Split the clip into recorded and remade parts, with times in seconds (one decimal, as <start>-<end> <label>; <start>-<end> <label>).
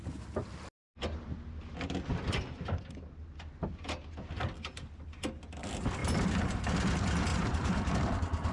0.0-6.0 recorded; 6.0-6.6 remade; 6.6-7.3 recorded; 7.3-7.9 remade; 7.9-8.5 recorded